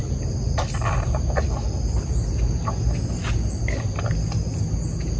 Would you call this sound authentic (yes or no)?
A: yes